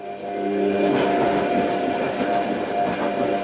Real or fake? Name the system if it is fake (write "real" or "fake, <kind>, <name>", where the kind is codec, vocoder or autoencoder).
real